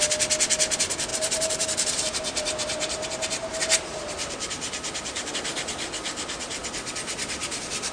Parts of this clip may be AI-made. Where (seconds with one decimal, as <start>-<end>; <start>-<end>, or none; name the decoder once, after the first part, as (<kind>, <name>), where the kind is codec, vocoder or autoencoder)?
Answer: 1.1-5.3 (vocoder, BigVGAN v2)